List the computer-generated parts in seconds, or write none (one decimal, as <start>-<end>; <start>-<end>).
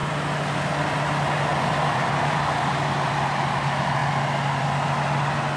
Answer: 1.5-2.4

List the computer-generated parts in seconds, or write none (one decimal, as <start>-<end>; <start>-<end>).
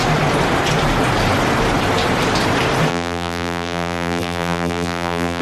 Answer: 2.9-5.4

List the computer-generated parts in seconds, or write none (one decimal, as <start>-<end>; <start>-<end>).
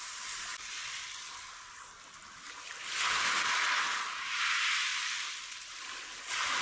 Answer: 4.9-6.0